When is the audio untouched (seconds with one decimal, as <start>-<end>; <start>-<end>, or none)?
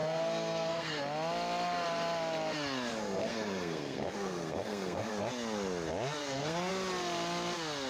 1.0-2.9; 5.1-6.2; 6.7-7.9